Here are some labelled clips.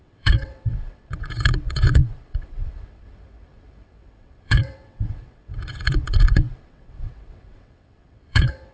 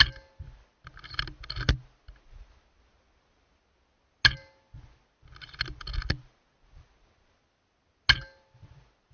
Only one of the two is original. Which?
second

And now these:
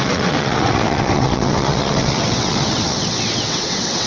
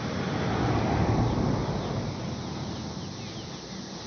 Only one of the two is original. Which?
second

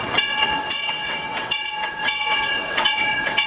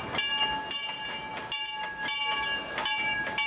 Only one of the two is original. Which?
second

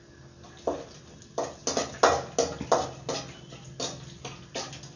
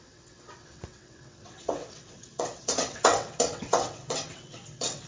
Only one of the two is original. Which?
first